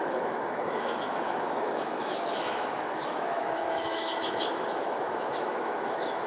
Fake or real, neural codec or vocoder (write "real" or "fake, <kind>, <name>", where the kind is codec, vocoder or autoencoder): fake, autoencoder, DAC-VAE